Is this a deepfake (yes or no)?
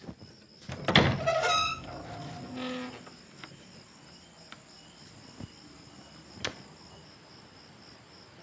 no